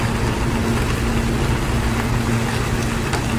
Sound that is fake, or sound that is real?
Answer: real